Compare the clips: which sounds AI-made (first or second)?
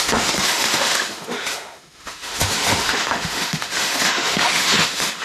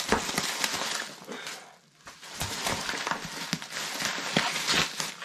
first